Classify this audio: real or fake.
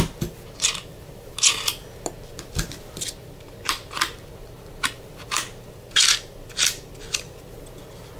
real